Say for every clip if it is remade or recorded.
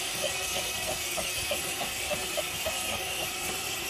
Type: remade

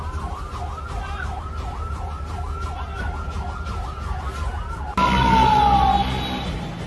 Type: recorded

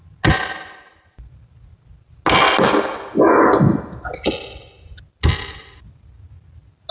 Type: recorded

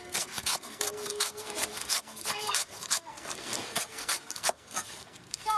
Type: remade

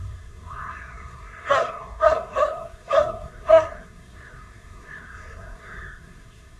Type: remade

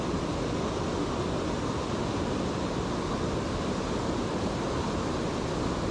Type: recorded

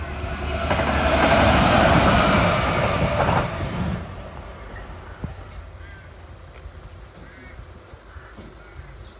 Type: recorded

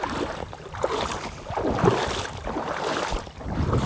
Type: recorded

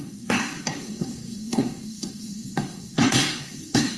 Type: remade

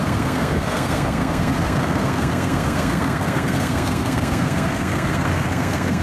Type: remade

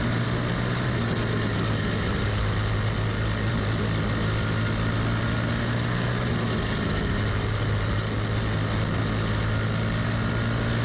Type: recorded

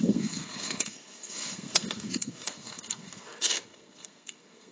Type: remade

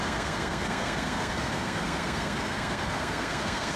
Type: remade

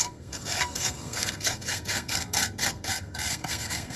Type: remade